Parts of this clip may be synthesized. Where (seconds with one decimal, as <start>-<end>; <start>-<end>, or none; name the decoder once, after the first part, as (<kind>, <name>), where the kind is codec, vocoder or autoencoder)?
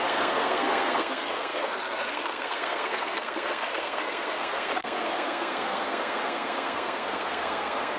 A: 0.0-8.0 (codec, SNAC)